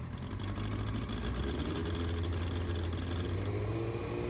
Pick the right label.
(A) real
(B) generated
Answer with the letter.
A